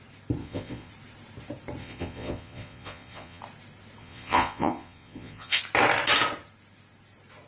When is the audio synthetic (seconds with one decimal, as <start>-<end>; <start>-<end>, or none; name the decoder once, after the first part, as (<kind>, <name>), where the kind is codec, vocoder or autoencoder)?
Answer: 0.4-0.9 (vocoder, Vocos); 1.8-3.4; 4.0-5.6